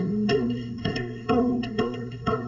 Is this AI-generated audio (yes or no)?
yes